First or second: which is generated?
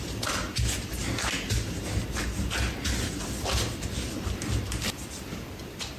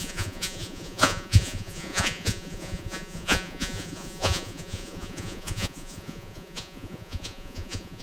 second